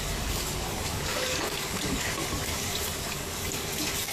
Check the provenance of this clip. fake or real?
fake